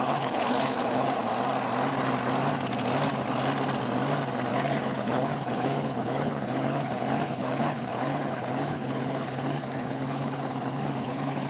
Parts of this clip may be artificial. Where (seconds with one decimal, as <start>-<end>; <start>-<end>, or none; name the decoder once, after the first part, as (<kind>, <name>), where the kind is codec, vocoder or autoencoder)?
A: 0.0-1.2 (codec, HILCodec); 4.5-11.5